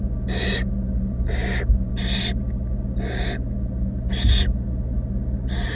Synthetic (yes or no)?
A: no